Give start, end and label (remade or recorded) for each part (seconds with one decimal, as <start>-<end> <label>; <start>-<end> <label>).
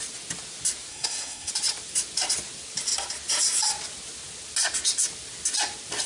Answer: 0.0-0.9 recorded; 0.9-1.5 remade; 1.5-6.1 recorded